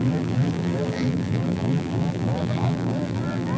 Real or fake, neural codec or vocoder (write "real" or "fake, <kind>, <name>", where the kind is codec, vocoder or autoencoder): fake, vocoder, BigVGAN v2